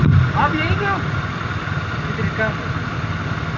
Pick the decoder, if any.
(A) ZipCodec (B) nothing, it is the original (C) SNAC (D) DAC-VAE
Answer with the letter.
B